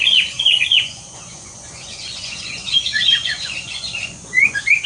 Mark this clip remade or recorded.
remade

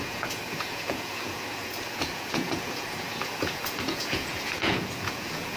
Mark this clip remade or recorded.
remade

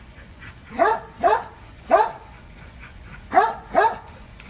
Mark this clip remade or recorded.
remade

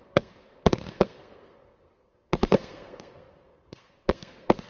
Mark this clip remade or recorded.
remade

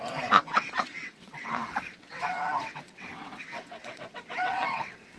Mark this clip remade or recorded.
remade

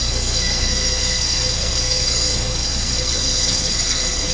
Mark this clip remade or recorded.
remade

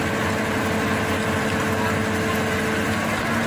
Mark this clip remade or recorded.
recorded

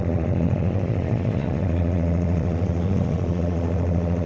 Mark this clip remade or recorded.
remade